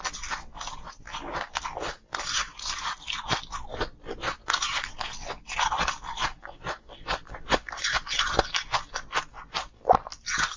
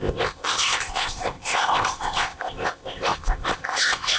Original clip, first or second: first